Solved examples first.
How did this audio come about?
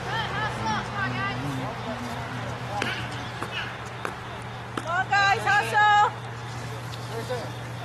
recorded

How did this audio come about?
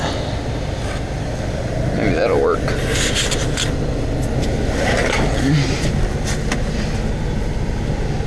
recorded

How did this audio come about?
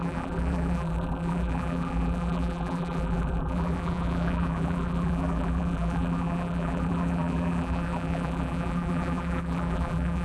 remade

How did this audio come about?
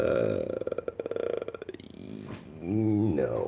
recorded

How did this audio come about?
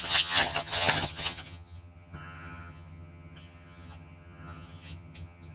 remade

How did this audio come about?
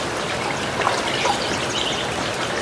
recorded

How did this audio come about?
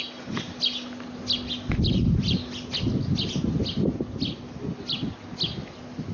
recorded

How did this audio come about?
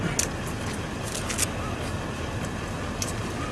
recorded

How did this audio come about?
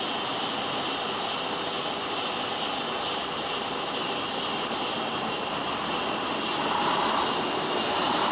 recorded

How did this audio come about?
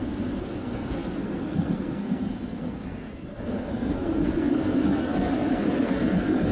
remade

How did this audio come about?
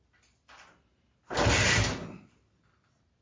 recorded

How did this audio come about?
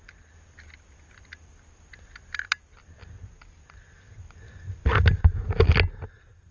recorded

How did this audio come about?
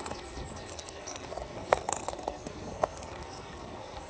remade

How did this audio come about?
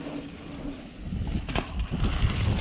recorded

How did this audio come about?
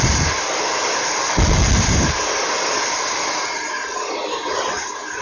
recorded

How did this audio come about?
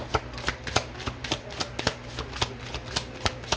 recorded